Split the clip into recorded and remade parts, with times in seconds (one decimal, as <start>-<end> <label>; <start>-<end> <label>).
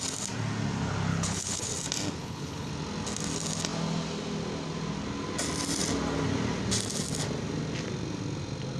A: 0.0-1.1 recorded; 1.1-1.7 remade; 1.7-2.2 recorded; 2.2-2.7 remade; 2.7-8.8 recorded